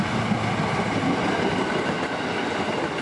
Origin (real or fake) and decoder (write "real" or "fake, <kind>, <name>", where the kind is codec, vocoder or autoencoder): real